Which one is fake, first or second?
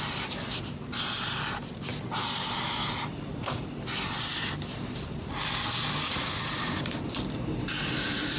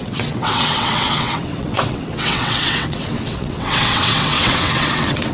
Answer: second